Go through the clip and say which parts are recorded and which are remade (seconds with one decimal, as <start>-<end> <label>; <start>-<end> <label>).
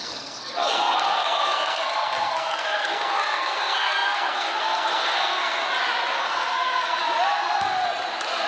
0.0-5.6 remade; 5.6-6.2 recorded; 6.2-7.0 remade; 7.0-8.5 recorded